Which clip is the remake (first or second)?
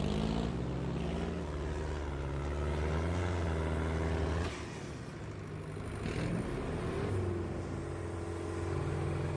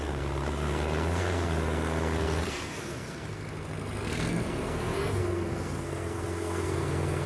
second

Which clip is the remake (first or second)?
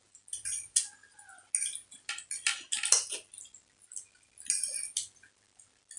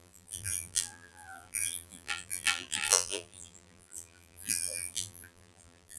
second